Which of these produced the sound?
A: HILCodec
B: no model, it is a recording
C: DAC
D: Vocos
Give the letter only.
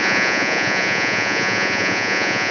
D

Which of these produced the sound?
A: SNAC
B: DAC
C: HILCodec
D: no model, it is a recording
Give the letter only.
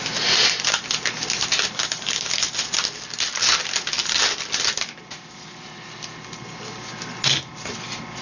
D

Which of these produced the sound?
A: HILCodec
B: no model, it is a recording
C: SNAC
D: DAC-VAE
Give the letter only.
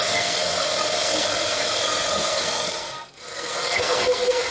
C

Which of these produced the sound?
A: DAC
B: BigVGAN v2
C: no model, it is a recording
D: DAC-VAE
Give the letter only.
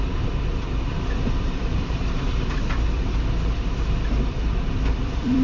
B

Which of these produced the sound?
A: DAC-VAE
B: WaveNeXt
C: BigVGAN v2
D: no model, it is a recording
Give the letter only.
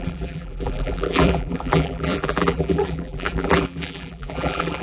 C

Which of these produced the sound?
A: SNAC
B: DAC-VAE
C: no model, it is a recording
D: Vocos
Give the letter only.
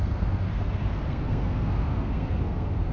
A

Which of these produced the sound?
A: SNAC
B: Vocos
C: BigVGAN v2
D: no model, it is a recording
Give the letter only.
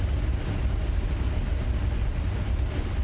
D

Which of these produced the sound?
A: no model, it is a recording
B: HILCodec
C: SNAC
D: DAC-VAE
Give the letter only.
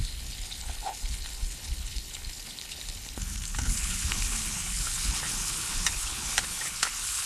B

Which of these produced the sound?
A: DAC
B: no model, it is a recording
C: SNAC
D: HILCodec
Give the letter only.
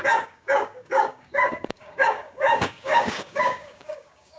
A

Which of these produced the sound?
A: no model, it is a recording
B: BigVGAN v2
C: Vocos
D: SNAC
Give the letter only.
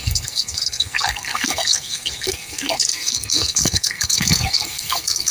D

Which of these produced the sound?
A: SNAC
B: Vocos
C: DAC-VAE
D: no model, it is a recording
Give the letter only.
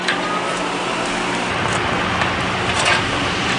D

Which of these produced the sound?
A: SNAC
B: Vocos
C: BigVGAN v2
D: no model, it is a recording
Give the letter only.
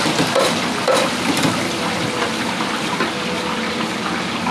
D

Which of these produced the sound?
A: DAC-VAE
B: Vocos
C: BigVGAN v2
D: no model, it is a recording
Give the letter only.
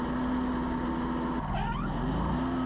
D